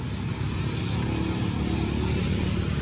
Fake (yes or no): no